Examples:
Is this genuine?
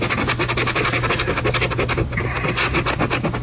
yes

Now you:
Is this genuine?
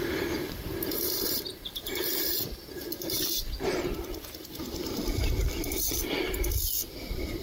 no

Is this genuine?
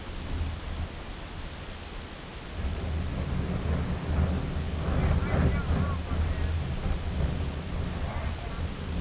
yes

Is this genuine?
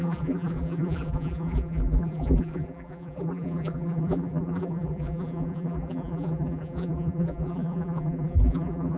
no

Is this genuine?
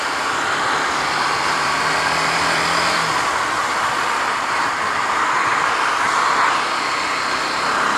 yes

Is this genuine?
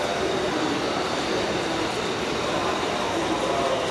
yes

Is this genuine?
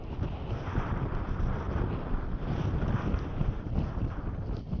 yes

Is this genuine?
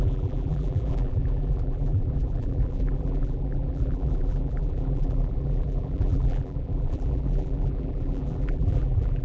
no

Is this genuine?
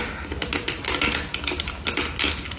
yes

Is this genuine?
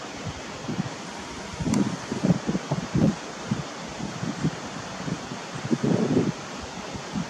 no